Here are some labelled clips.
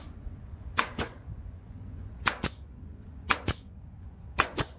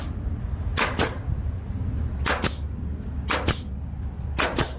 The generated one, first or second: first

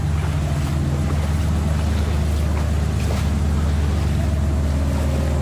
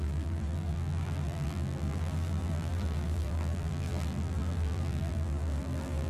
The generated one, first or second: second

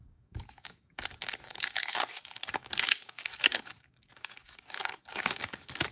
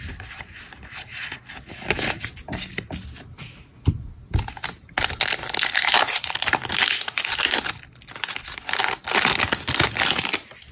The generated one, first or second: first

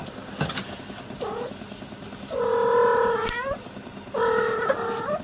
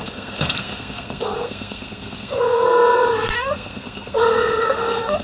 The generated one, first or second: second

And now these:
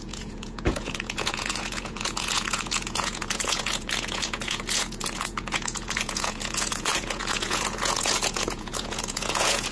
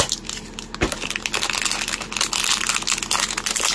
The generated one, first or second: first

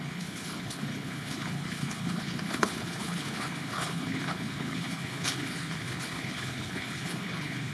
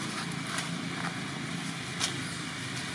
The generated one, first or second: first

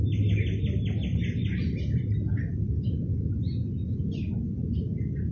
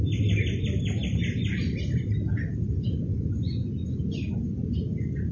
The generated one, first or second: second